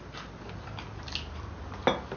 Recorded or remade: recorded